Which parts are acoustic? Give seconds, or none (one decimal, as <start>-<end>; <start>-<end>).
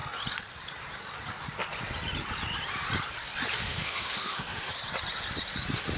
0.0-3.6; 4.7-6.0